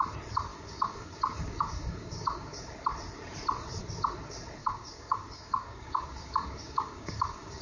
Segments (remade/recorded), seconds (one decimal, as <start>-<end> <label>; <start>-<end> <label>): 0.0-0.5 recorded; 0.5-2.6 remade; 2.6-4.6 recorded; 4.6-7.6 remade